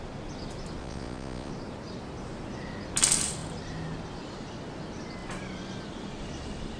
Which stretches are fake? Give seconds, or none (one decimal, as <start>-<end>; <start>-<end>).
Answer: 0.8-1.5